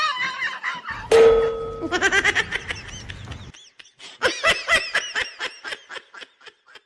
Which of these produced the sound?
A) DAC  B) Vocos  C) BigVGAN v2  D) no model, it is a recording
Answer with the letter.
D